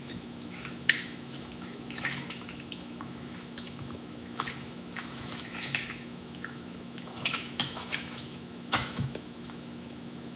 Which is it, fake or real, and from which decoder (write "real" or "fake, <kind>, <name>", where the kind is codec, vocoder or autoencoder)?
fake, autoencoder, DAC-VAE